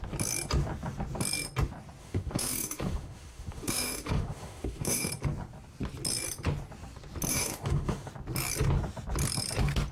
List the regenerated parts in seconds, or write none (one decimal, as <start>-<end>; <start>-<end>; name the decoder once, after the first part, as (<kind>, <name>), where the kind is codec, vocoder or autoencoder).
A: 2.0-5.1 (autoencoder, DAC-VAE); 7.3-8.1